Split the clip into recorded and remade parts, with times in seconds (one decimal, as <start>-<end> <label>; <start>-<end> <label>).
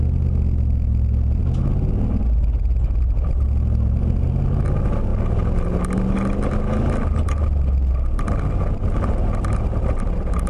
0.0-10.5 recorded